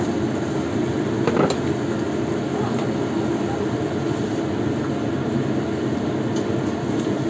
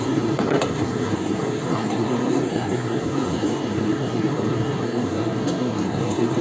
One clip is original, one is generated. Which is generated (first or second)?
second